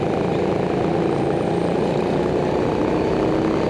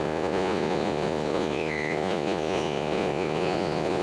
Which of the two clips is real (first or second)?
first